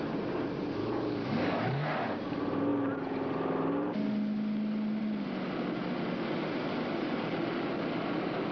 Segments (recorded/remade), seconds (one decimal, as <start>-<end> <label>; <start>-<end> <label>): 0.0-0.8 recorded; 0.8-1.9 remade; 1.9-8.5 recorded